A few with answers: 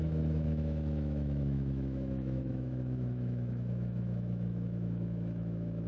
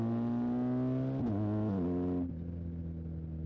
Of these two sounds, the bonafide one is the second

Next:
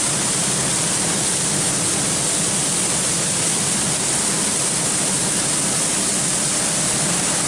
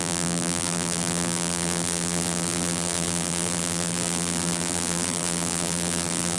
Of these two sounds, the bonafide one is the first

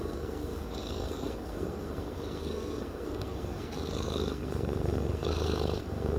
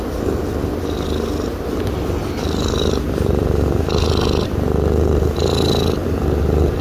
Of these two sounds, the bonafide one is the second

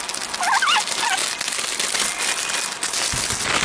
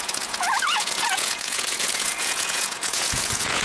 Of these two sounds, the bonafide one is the first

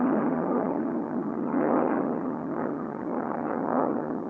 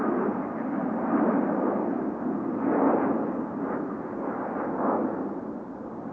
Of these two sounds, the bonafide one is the second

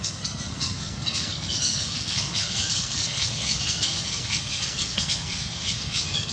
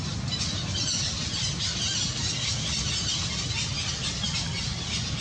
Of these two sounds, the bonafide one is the second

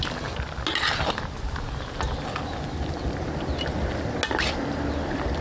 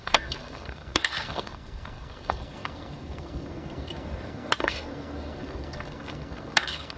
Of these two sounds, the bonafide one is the first